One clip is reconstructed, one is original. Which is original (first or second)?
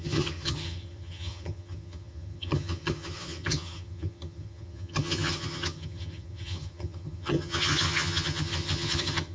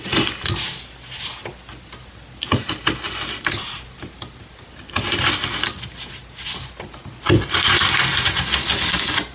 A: second